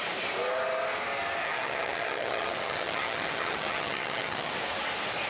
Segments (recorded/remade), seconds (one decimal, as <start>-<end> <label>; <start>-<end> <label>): 0.0-1.4 recorded; 1.4-4.5 remade; 4.5-5.3 recorded